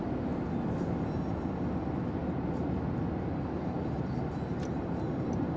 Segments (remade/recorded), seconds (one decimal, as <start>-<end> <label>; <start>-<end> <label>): 0.0-5.6 recorded